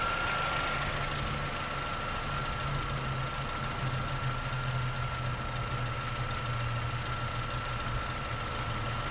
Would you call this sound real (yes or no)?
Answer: yes